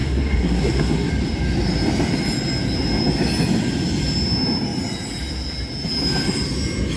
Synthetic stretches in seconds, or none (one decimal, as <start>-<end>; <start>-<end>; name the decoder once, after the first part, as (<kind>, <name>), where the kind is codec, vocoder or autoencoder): 0.0-1.1 (codec, SNAC)